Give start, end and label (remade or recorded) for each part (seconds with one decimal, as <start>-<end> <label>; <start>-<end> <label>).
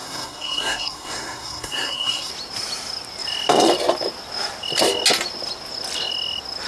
0.0-2.3 remade; 2.3-6.7 recorded